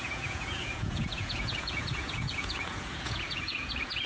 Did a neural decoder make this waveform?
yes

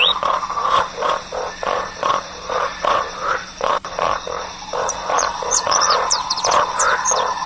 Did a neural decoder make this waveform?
yes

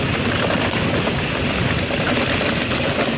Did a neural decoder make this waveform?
no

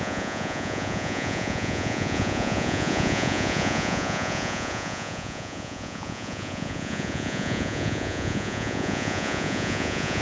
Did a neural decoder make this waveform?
yes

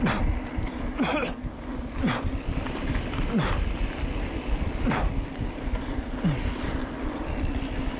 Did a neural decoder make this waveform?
no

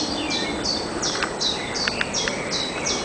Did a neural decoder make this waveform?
no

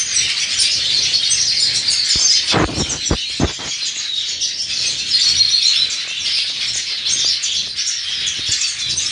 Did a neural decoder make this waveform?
no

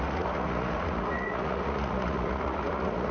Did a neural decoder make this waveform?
yes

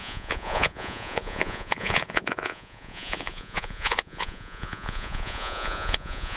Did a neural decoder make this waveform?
yes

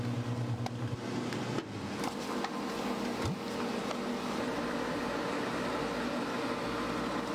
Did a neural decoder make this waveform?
no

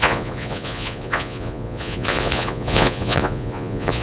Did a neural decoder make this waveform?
yes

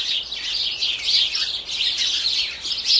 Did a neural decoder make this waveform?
no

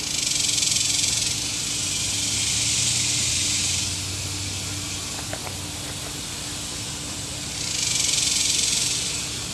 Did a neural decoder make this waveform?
no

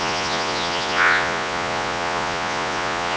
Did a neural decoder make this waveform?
yes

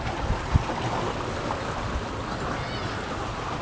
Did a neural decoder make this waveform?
no